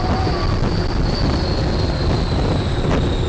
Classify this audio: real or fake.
real